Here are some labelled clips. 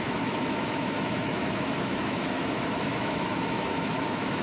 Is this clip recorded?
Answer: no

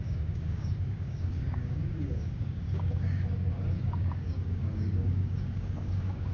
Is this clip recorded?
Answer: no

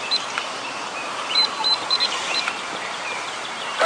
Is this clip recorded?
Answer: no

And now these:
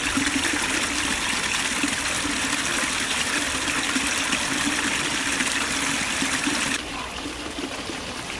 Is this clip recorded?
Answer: yes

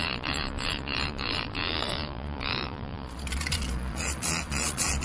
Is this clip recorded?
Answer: no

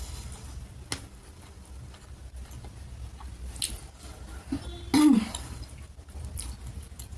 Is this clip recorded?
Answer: yes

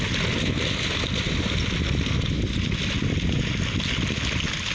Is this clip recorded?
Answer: yes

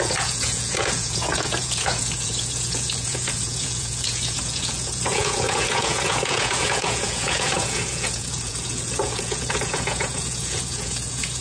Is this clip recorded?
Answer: no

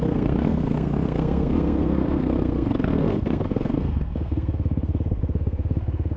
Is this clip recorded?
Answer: no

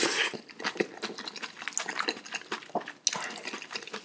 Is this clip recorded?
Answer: yes